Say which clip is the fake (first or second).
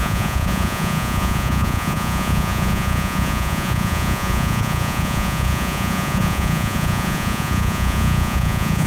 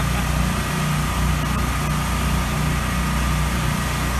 first